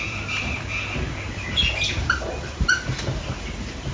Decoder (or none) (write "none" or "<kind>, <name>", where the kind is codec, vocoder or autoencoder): none